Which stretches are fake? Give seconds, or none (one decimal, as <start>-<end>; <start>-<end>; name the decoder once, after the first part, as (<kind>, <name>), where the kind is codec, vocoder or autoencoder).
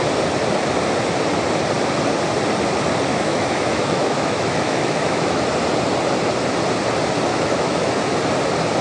3.1-5.4 (autoencoder, DAC-VAE); 7.3-7.9